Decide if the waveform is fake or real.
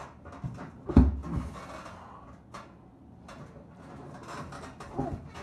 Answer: real